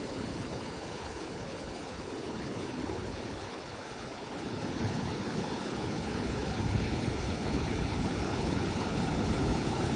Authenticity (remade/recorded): remade